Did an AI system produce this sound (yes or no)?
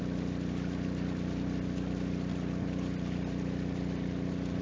no